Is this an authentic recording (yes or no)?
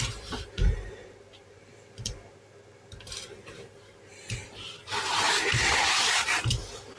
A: no